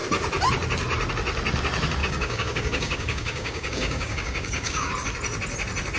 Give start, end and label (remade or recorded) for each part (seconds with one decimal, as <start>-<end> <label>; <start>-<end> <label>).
0.0-2.0 recorded; 2.0-4.9 remade; 4.9-6.0 recorded